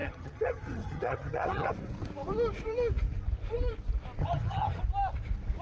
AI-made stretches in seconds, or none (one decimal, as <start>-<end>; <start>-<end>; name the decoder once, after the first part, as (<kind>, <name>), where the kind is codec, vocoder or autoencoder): 0.0-1.7 (vocoder, HiFi-GAN); 4.2-4.8